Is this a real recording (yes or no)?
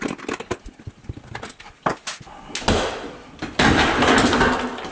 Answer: yes